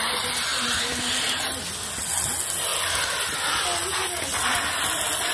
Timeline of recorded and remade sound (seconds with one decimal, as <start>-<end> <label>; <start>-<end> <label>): 0.0-5.3 recorded